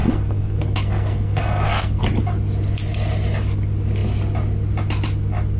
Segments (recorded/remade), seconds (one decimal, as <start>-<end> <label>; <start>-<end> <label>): 0.0-2.0 remade; 2.0-5.6 recorded